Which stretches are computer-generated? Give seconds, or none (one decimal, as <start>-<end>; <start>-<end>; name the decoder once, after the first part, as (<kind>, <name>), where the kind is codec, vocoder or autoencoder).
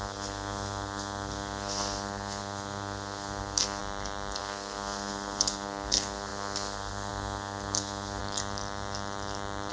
0.0-3.8 (codec, SNAC); 4.4-8.2